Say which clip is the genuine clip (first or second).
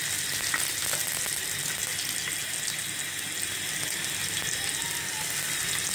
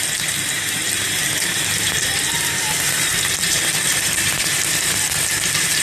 first